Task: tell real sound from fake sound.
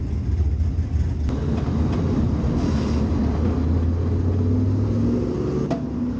real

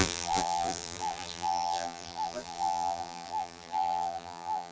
fake